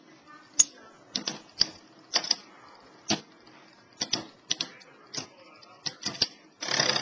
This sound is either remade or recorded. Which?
recorded